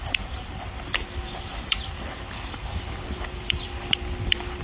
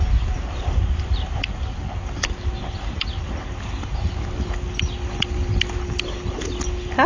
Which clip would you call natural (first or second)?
second